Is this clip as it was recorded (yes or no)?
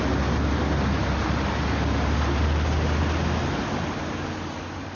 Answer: yes